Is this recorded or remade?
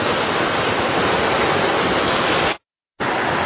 recorded